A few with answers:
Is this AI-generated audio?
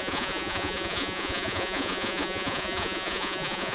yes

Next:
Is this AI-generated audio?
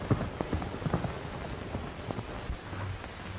no